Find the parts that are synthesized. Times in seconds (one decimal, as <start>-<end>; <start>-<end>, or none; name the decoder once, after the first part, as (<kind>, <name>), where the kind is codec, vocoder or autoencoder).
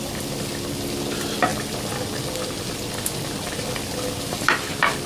none